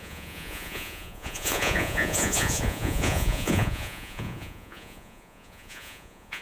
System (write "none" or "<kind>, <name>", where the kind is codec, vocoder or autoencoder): vocoder, Vocos